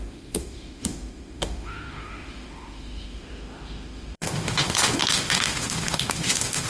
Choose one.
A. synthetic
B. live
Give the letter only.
A